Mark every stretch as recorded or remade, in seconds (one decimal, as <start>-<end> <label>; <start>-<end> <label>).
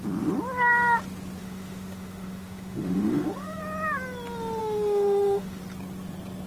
0.0-1.4 recorded; 1.4-3.6 remade; 3.6-4.6 recorded; 4.6-5.6 remade; 5.6-6.5 recorded